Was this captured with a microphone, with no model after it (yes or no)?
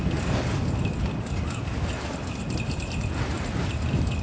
yes